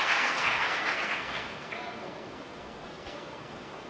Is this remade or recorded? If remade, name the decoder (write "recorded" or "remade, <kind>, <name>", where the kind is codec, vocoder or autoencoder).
remade, codec, SNAC